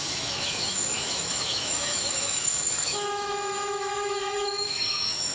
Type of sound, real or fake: fake